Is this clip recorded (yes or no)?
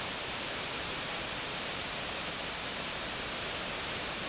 no